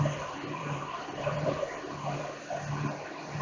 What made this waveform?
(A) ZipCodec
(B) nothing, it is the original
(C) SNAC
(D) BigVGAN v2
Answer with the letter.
D